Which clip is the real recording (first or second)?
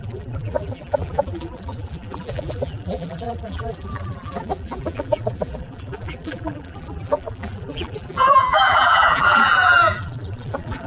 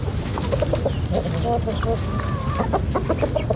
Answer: second